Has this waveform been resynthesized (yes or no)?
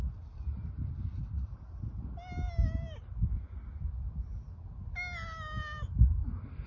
no